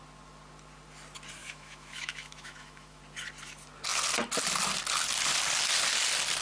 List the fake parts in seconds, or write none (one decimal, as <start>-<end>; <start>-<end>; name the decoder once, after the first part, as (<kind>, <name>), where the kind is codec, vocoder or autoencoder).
1.4-3.0 (autoencoder, DAC-VAE)